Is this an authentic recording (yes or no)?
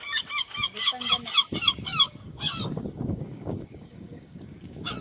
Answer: no